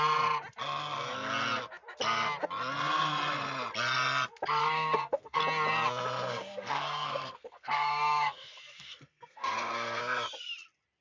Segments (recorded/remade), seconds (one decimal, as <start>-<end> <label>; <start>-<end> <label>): 0.0-4.6 recorded; 4.6-5.4 remade; 5.4-6.3 recorded; 6.3-10.0 remade; 10.0-11.0 recorded